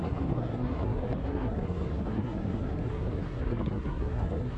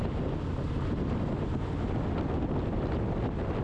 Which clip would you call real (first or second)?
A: second